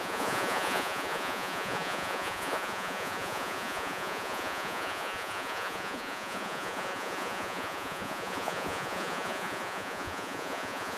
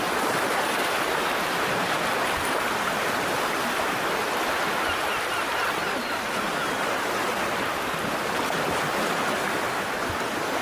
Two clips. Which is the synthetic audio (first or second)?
first